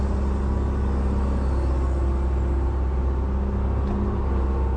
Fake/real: real